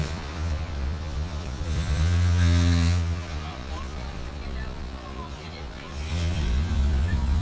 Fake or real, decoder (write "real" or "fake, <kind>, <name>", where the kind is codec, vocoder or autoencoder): fake, vocoder, Vocos